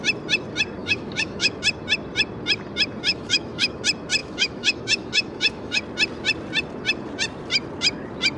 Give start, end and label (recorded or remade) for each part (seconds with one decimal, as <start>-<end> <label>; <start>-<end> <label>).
0.0-0.8 recorded; 0.8-1.6 remade; 1.6-3.1 recorded; 3.1-3.8 remade; 3.8-4.2 recorded; 4.2-5.8 remade; 5.8-8.4 recorded